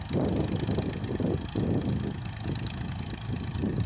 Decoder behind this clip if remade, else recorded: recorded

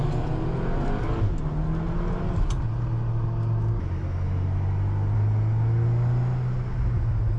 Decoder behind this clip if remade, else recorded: recorded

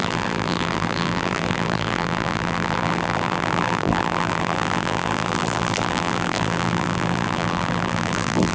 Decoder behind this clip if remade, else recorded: remade, vocoder, BigVGAN v2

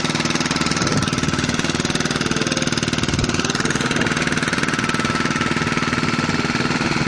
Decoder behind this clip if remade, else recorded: recorded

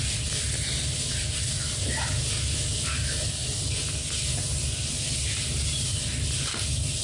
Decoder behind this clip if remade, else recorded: recorded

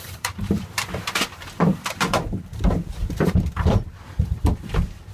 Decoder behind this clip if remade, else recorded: remade, vocoder, BigVGAN v2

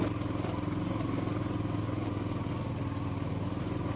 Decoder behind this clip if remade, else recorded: recorded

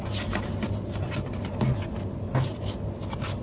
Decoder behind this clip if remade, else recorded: recorded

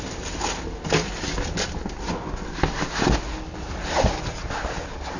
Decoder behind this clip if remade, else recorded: recorded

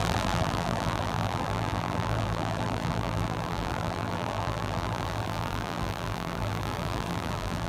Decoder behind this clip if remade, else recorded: remade, vocoder, BigVGAN v2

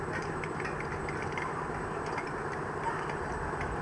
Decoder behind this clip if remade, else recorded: remade, vocoder, BigVGAN v2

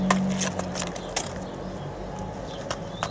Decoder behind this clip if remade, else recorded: recorded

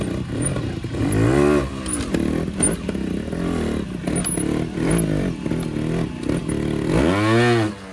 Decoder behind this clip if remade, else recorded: recorded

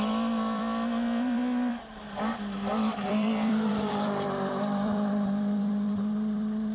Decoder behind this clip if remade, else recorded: remade, vocoder, BigVGAN v2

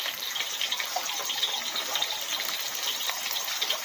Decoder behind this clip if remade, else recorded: remade, vocoder, BigVGAN v2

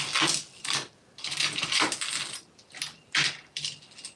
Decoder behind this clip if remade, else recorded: recorded